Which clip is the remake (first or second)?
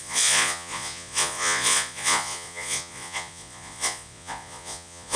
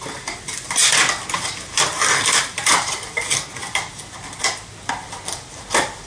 first